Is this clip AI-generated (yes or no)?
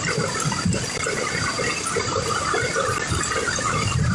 yes